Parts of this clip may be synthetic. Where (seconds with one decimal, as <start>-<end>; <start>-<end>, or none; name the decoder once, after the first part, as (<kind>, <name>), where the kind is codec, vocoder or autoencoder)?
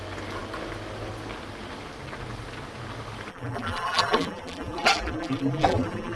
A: 3.3-6.2 (vocoder, BigVGAN v2)